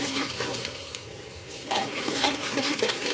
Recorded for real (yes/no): no